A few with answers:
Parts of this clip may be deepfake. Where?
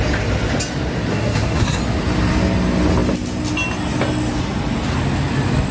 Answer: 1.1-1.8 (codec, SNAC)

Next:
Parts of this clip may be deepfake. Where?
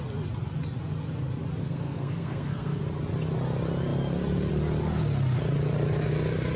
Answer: 1.6-2.8 (codec, SNAC)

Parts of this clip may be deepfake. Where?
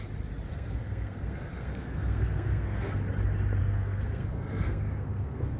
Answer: 0.5-2.9 (codec, SNAC); 3.6-5.6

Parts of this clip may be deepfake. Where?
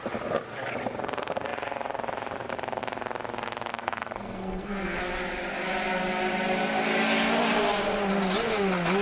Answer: 3.7-5.0 (codec, SNAC)